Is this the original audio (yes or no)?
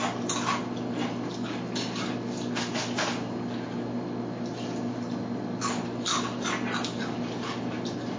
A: yes